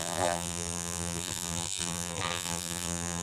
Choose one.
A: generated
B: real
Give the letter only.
A